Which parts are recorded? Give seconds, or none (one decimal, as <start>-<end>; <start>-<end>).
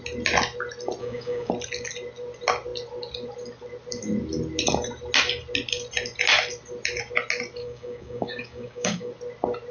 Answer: 0.0-1.0; 1.5-7.6; 9.1-9.7